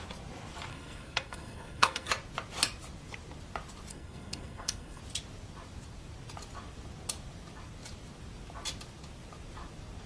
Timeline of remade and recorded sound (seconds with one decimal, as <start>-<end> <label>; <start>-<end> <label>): 0.0-0.7 recorded; 0.7-2.1 remade; 2.1-3.9 recorded; 3.9-5.0 remade; 5.0-10.1 recorded